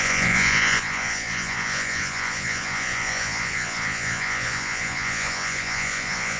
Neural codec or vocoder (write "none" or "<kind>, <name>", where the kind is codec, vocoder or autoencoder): vocoder, Vocos